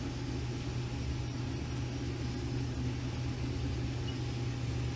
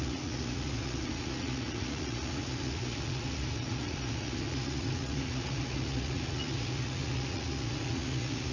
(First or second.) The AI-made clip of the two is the second